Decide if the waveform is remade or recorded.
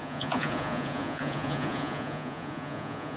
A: remade